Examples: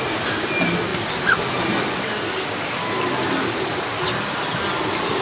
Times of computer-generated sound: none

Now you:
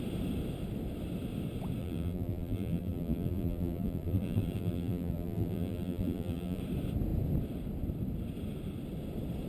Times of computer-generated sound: 1.8-6.6 (vocoder, BigVGAN v2)

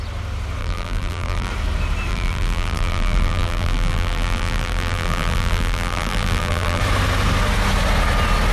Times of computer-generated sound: 0.6-1.5 (vocoder, BigVGAN v2); 2.1-6.8

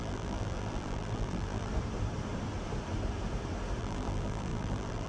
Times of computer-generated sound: 0.0-1.7 (vocoder, BigVGAN v2); 3.8-5.1

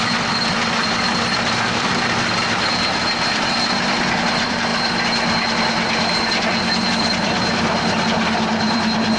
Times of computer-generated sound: 0.0-4.7 (vocoder, BigVGAN v2); 6.9-9.2

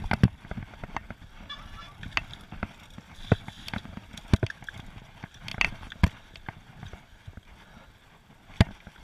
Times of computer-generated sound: none